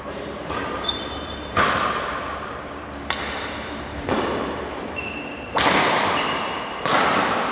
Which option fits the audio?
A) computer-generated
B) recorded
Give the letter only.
A